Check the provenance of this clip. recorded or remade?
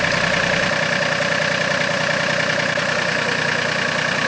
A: recorded